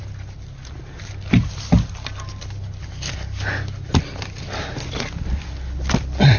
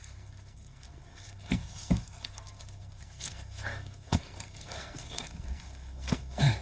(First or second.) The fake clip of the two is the second